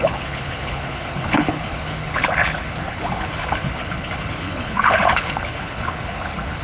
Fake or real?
fake